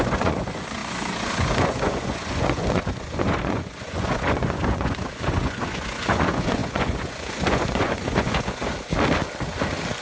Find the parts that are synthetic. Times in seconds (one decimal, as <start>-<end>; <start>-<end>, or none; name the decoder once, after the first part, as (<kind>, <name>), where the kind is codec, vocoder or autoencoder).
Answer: 0.0-8.7 (vocoder, Vocos)